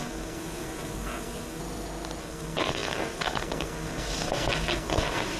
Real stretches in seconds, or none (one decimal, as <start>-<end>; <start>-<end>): 1.6-2.2

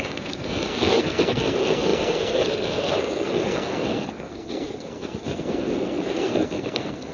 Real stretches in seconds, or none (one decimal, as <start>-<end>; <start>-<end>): none

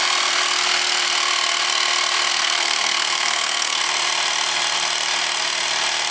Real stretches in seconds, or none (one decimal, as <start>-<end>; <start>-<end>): 0.0-2.3; 3.8-6.1

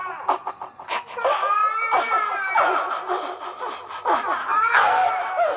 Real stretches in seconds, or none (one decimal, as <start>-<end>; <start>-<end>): 0.0-4.4; 5.1-5.6

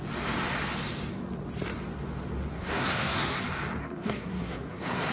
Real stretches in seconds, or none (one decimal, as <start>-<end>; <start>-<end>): 0.0-2.5; 3.4-3.8